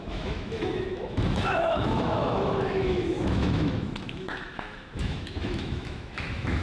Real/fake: fake